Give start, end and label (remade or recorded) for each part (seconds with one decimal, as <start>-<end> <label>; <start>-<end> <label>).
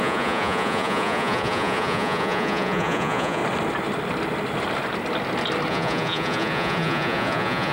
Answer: 0.0-3.4 remade; 3.4-5.7 recorded; 5.7-7.7 remade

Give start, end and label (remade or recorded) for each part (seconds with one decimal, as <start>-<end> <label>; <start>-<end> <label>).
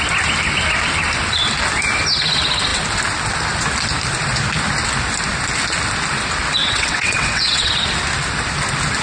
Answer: 0.0-6.6 recorded; 6.6-7.7 remade; 7.7-9.0 recorded